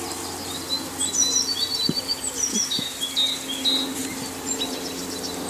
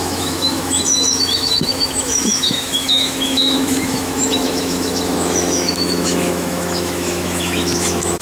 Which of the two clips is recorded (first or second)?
first